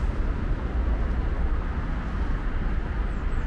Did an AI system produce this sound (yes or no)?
no